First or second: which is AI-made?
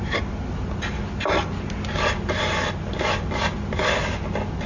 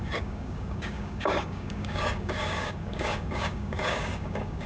second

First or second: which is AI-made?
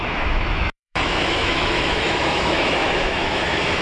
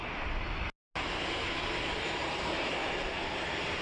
first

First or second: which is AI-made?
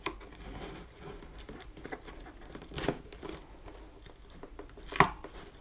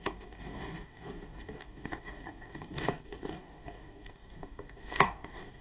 second